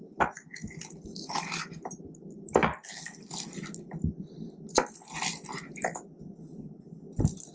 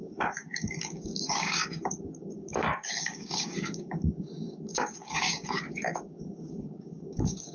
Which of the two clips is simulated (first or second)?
second